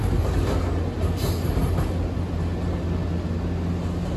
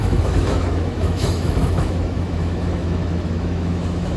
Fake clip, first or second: second